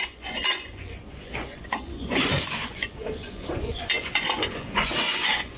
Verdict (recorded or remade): remade